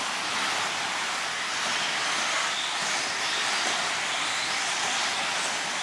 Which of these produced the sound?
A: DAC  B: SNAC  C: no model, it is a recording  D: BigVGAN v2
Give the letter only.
C